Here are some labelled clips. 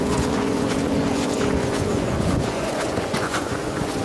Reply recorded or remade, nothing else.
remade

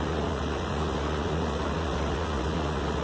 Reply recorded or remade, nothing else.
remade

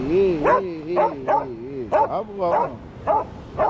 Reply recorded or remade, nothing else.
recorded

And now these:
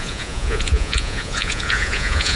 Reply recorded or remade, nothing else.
remade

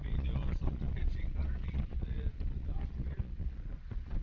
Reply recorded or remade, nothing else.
remade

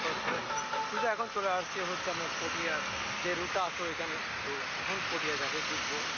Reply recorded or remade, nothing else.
recorded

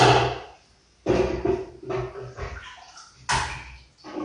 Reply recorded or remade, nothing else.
recorded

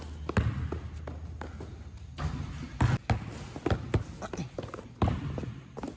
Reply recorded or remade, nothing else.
recorded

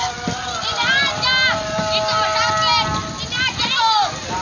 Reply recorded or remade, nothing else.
recorded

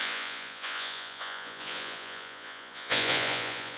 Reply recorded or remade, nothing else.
remade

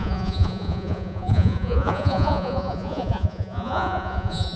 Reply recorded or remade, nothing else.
remade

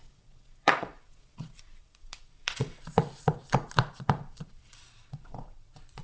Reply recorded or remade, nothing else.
remade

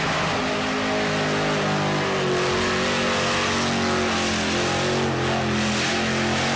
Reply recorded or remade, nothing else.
recorded